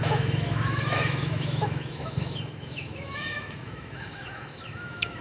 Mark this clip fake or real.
fake